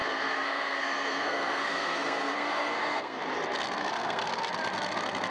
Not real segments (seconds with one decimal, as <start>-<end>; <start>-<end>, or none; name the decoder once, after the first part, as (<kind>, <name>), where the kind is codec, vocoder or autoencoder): 0.0-3.2 (codec, SNAC); 3.8-4.5